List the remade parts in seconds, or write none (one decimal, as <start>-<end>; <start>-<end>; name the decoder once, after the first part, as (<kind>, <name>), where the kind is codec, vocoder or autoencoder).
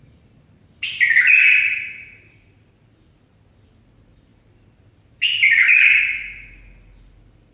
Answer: 1.4-2.7 (vocoder, BigVGAN v2)